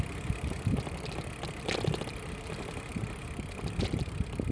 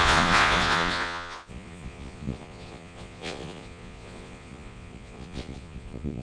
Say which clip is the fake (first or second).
second